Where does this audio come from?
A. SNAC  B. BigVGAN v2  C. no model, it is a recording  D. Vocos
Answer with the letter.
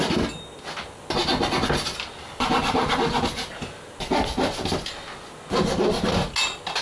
C